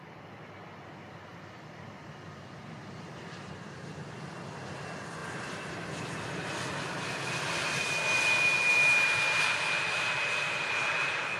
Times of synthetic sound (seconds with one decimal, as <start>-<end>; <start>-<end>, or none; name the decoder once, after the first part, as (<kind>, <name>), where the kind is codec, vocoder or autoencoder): 1.3-3.5 (vocoder, BigVGAN v2); 5.2-5.9